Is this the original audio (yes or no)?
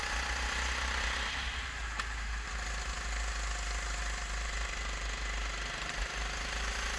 yes